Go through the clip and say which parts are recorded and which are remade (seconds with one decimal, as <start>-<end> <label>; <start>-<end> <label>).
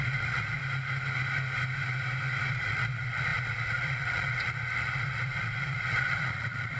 0.0-0.6 remade; 0.6-2.5 recorded; 2.5-6.8 remade